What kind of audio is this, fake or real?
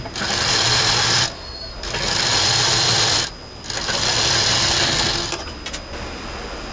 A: real